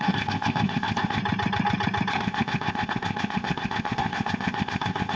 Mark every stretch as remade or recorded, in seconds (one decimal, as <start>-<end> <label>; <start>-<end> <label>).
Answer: 0.0-1.2 remade; 1.2-2.1 recorded; 2.1-5.2 remade